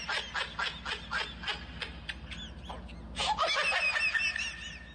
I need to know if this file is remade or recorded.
recorded